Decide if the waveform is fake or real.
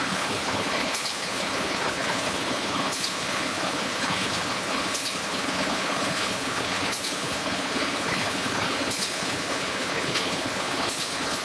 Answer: fake